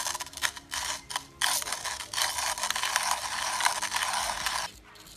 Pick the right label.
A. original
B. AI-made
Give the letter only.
A